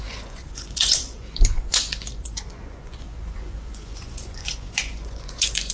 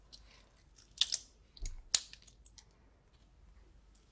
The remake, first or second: first